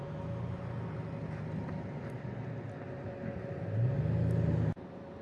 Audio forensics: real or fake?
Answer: real